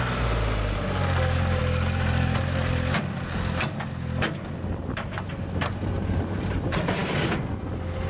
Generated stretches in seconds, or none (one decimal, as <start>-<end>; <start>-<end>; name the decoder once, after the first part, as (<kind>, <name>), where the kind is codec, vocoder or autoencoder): none